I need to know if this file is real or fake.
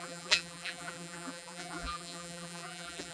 fake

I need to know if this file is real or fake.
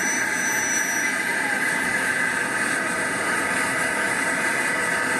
real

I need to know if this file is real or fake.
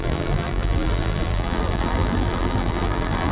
fake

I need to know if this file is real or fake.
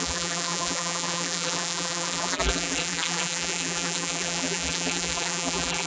fake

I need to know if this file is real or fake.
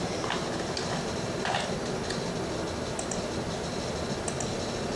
real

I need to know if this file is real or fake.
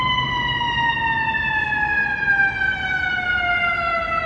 real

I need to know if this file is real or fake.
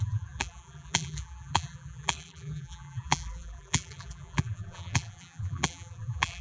fake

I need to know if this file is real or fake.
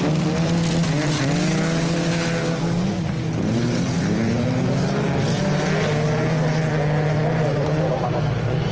real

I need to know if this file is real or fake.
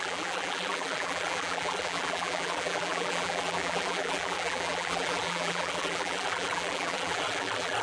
fake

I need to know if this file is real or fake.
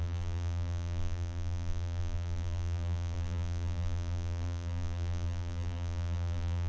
fake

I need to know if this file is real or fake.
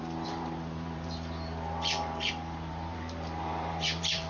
fake